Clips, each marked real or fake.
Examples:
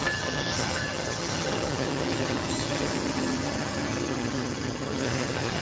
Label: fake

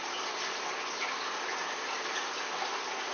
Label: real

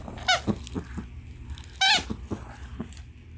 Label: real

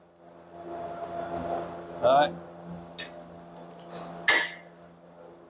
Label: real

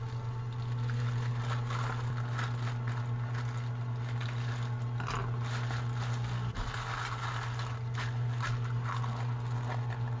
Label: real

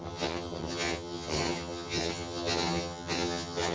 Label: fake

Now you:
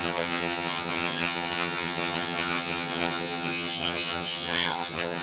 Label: fake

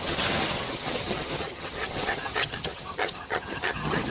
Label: fake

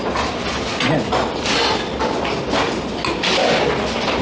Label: real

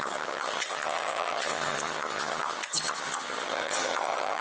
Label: fake